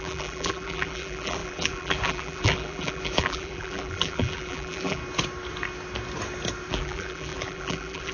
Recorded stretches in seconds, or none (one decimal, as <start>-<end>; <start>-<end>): 5.0-6.7

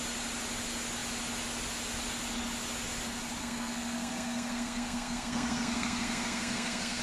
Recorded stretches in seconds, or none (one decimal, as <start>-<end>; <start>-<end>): 0.0-3.4

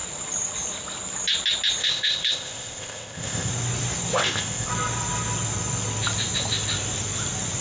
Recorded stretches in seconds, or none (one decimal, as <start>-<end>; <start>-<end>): 0.0-1.8; 3.5-4.2; 4.7-7.6

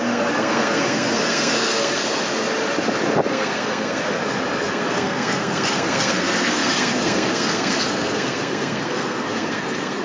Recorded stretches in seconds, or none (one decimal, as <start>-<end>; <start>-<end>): 2.0-3.3; 4.2-4.7

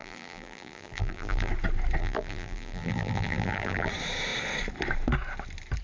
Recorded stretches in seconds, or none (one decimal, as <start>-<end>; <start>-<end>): 1.5-2.0; 3.9-5.8

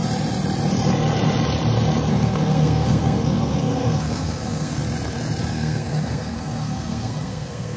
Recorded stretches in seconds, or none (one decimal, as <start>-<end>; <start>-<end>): 0.0-2.1; 4.8-5.5